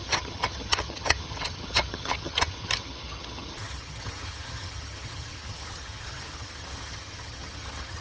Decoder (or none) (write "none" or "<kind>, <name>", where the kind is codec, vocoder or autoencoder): vocoder, HiFi-GAN